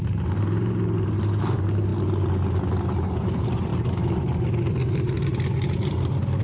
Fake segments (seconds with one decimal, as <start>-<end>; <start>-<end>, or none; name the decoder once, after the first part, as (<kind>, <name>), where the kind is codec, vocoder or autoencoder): 0.0-1.9 (vocoder, BigVGAN v2); 3.0-6.4